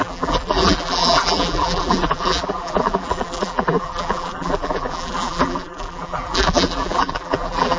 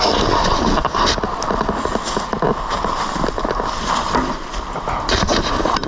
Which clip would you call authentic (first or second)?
second